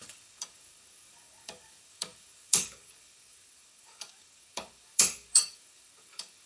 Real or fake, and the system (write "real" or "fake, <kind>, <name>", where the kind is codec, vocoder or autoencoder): fake, codec, DAC